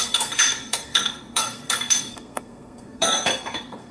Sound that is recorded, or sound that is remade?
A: remade